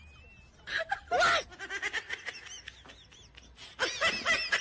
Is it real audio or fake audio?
real